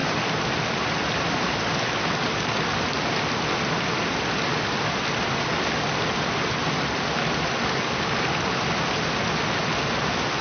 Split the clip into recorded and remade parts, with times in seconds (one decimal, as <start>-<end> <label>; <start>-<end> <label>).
0.0-10.4 recorded